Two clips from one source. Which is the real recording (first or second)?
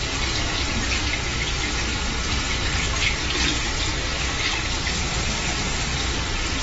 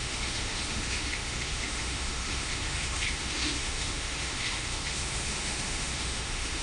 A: first